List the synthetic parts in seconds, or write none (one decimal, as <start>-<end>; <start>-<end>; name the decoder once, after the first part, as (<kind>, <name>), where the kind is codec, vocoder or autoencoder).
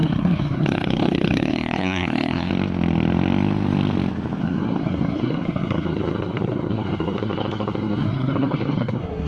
0.0-2.5 (codec, SNAC); 4.4-9.3